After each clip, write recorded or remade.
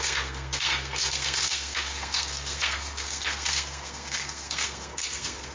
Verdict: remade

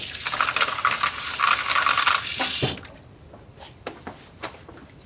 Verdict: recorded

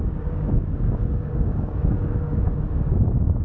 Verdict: remade